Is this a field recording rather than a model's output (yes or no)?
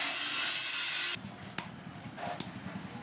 yes